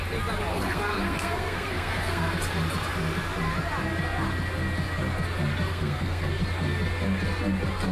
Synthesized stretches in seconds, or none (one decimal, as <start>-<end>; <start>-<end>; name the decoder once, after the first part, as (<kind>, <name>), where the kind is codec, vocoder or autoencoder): 0.5-2.3 (codec, SNAC); 5.7-6.3